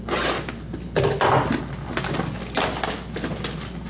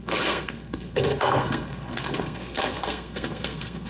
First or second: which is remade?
second